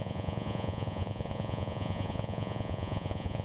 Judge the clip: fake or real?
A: fake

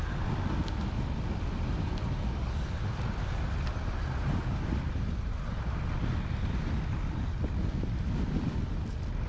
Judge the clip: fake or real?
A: real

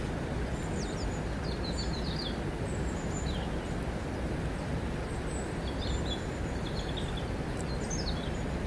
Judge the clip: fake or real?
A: real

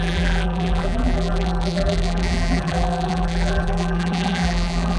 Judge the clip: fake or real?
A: fake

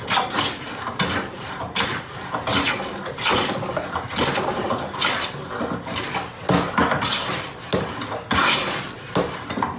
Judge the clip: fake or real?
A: real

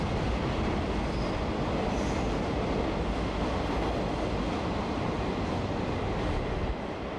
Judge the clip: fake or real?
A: real